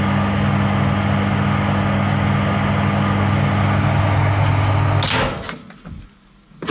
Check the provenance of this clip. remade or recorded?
recorded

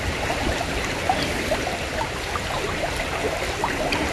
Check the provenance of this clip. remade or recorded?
recorded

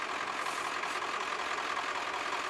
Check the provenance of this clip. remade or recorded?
recorded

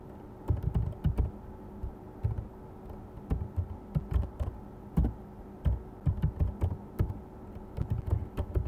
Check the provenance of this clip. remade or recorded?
recorded